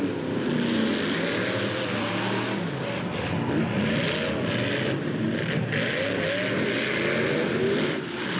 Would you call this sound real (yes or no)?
yes